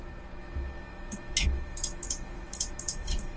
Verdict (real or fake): fake